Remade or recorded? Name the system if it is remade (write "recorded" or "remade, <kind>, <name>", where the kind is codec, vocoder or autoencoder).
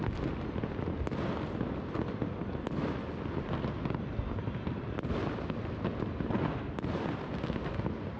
recorded